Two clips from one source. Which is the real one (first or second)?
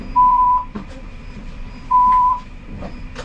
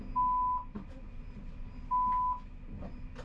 second